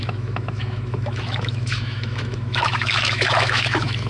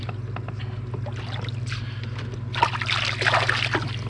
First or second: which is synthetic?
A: first